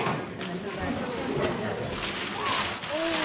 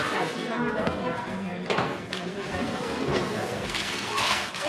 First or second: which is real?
first